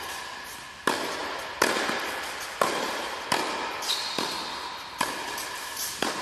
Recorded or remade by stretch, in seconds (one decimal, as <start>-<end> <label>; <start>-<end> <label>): 0.0-1.2 recorded; 1.2-4.9 remade; 4.9-6.2 recorded